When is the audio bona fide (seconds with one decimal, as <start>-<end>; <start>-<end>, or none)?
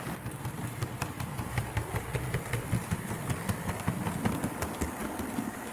none